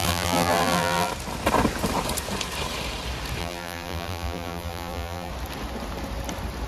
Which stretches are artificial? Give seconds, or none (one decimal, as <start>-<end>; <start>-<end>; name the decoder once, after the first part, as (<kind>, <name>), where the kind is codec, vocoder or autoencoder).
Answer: 0.0-1.1 (vocoder, BigVGAN v2); 3.4-5.3